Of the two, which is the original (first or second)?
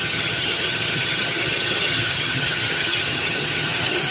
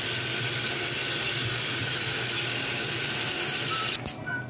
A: second